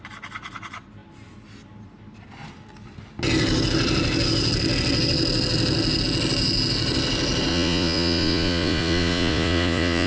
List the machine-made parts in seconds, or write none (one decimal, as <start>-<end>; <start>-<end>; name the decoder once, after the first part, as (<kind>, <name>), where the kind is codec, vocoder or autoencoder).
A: 7.5-10.1 (vocoder, Vocos)